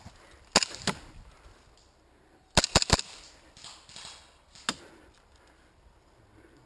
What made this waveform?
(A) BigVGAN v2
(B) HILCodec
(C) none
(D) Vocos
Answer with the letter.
C